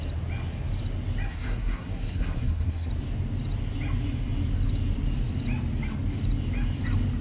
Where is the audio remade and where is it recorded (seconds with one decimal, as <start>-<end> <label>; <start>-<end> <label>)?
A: 0.0-1.3 recorded; 1.3-2.9 remade; 2.9-7.2 recorded